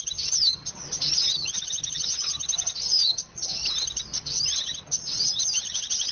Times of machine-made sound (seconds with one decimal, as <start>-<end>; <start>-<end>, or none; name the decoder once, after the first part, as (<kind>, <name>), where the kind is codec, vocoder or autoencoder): 0.0-3.6 (vocoder, HiFi-GAN); 4.2-6.1

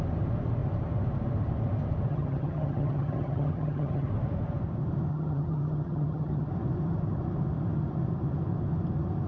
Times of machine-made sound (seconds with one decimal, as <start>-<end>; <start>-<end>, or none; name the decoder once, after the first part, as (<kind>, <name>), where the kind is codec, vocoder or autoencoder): 2.1-4.1 (vocoder, HiFi-GAN); 5.1-6.5

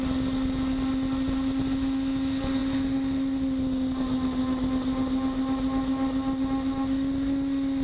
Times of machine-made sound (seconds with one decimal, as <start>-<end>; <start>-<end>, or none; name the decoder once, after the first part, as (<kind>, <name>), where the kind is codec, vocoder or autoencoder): none

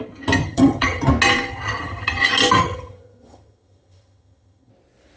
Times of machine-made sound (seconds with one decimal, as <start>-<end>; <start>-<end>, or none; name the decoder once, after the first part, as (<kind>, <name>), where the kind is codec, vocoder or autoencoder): 0.4-1.1 (vocoder, HiFi-GAN); 1.5-2.2; 2.6-4.7

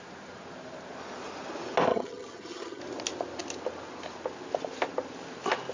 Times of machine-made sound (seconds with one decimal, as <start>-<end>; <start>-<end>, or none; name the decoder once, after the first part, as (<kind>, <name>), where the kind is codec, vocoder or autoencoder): 1.9-2.8 (vocoder, HiFi-GAN)

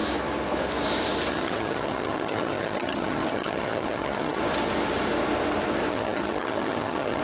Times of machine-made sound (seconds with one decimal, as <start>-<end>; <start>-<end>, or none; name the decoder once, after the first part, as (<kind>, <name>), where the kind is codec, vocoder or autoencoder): 1.3-4.4 (vocoder, HiFi-GAN); 5.9-7.2